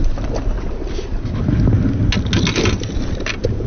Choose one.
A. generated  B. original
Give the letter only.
B